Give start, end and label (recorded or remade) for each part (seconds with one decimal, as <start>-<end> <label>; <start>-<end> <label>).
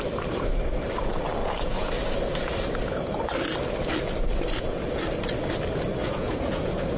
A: 0.0-1.4 recorded; 1.4-1.9 remade; 1.9-6.0 recorded; 6.0-7.0 remade